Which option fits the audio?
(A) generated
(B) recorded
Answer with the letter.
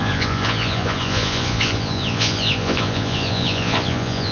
A